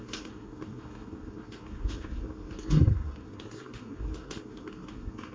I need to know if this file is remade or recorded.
remade